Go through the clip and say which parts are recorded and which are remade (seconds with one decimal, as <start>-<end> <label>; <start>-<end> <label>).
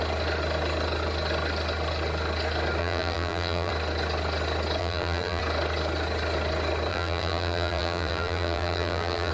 0.0-2.8 recorded; 2.8-3.7 remade; 3.7-4.8 recorded; 4.8-5.4 remade; 5.4-6.9 recorded; 6.9-9.3 remade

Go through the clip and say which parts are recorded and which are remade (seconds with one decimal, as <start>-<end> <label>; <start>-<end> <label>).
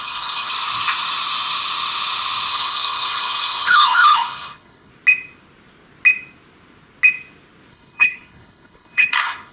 0.0-0.5 remade; 0.5-2.5 recorded; 2.5-4.9 remade; 4.9-7.7 recorded; 7.7-9.5 remade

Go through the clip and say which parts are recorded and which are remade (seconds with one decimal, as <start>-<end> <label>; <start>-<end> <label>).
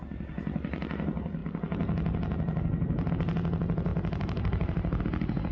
0.0-3.9 recorded; 3.9-5.0 remade; 5.0-5.5 recorded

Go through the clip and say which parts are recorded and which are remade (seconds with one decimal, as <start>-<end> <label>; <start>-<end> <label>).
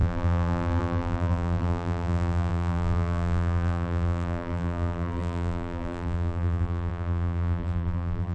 0.0-8.3 remade